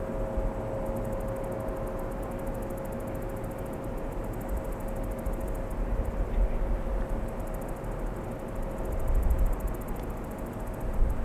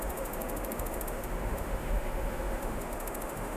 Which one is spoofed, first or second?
second